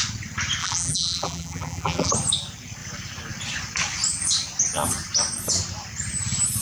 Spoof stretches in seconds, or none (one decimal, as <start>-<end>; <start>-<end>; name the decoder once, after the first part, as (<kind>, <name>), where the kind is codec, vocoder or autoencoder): 0.6-2.1 (vocoder, BigVGAN v2)